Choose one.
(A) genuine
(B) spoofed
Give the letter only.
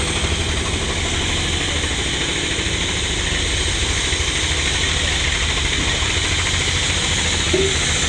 A